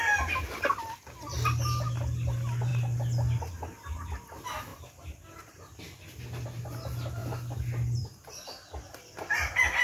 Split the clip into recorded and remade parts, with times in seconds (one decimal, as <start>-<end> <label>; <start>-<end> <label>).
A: 0.0-4.7 recorded; 4.7-5.5 remade; 5.5-9.8 recorded